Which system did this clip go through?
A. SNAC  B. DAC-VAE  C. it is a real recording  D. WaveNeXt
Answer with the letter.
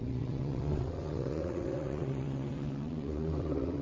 D